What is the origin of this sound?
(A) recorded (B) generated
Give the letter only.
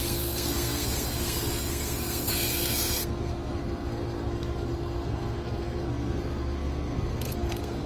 B